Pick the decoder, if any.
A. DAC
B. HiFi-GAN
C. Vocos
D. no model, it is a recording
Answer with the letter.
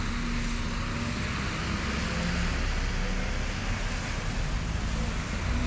D